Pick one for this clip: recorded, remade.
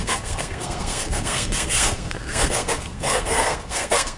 remade